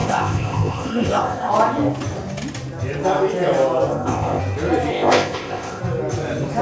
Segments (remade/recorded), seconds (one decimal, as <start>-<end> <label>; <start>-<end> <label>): 0.0-1.5 remade; 1.5-3.9 recorded; 3.9-4.4 remade; 4.4-4.9 recorded; 4.9-5.8 remade; 5.8-6.6 recorded